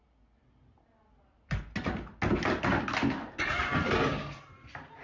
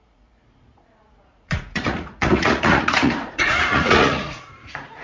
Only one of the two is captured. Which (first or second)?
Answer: first